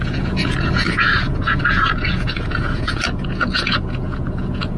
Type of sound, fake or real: fake